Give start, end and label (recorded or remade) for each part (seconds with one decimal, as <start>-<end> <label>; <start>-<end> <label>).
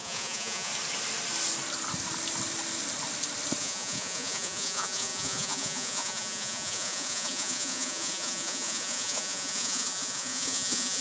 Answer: 0.0-0.7 remade; 0.7-3.6 recorded; 3.6-11.0 remade